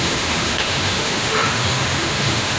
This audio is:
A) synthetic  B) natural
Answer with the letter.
A